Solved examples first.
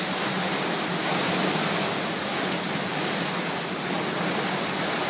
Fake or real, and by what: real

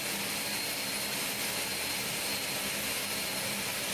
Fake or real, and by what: real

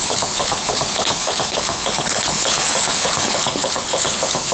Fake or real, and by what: fake, codec, HILCodec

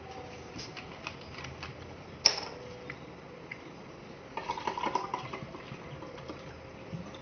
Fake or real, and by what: real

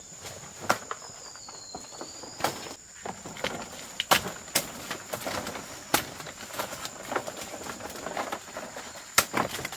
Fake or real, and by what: real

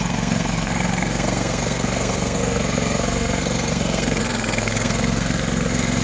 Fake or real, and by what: fake, codec, SNAC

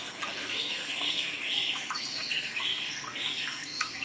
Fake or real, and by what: fake, codec, SNAC